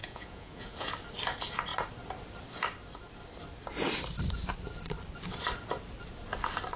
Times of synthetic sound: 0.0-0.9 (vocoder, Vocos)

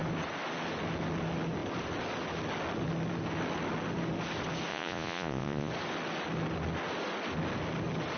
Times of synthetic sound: 4.7-5.7 (vocoder, Vocos)

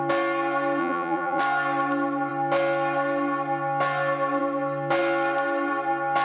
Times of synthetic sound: 0.8-1.4 (vocoder, Vocos)

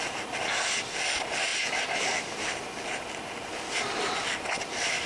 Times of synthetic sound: none